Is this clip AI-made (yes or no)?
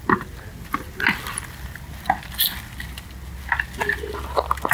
no